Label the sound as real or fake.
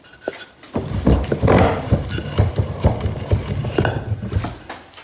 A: real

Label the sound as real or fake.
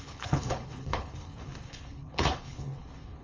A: fake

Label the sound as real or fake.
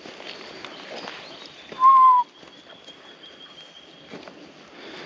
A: fake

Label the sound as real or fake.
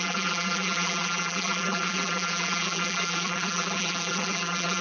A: fake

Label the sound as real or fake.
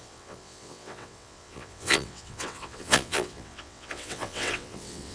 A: fake